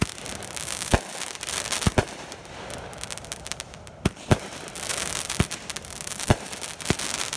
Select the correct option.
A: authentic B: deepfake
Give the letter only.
B